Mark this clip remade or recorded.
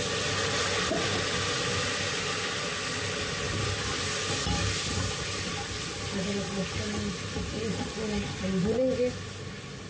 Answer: recorded